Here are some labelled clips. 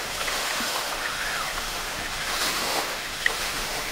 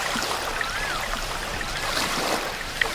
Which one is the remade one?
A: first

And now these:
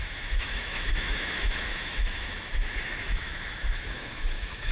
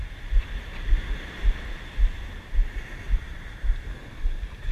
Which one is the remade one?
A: first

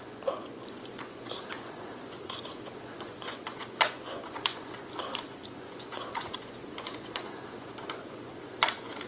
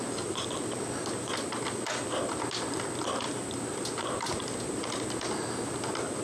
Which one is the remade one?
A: first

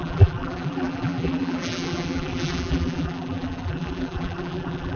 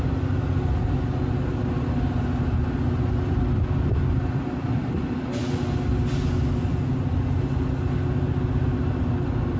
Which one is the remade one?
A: first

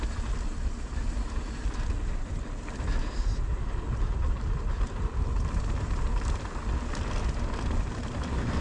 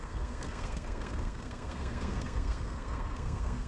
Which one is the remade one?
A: second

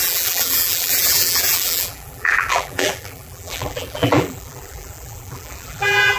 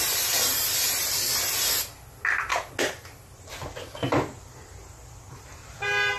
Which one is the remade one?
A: first